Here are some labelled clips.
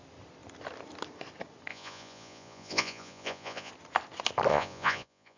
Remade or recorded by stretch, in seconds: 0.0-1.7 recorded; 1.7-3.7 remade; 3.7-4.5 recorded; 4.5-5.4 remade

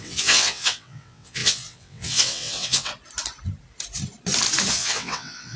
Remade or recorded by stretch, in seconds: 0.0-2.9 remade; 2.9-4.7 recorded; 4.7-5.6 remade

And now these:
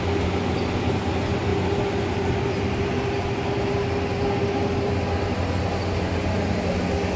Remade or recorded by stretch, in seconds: 0.0-7.2 recorded

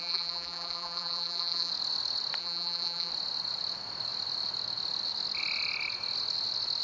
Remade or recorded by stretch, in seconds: 0.0-1.7 remade; 1.7-2.4 recorded; 2.4-3.1 remade; 3.1-6.8 recorded

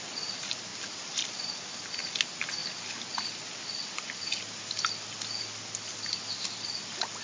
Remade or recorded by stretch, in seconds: 0.0-0.7 recorded; 0.7-1.3 remade; 1.3-7.2 recorded

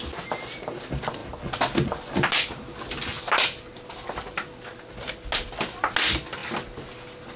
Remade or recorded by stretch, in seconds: 0.0-7.4 recorded